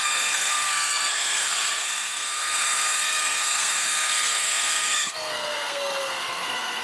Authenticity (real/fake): fake